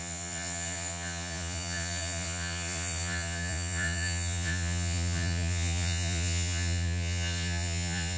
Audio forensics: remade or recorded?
remade